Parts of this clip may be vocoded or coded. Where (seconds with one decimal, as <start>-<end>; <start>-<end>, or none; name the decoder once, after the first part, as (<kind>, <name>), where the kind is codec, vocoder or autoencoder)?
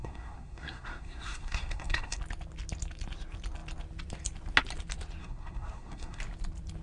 0.0-2.2 (codec, SNAC); 5.2-6.2